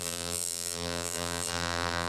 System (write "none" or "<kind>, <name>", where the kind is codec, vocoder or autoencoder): vocoder, BigVGAN v2